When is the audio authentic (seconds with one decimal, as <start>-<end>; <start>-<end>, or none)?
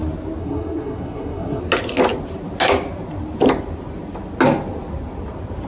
0.0-0.4; 1.6-5.7